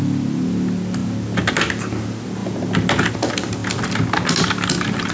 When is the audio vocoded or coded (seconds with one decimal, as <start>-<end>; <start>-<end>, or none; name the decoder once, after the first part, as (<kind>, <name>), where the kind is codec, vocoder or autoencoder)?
none